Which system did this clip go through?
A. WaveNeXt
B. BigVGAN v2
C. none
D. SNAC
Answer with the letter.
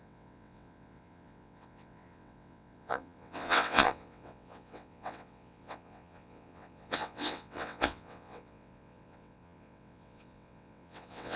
A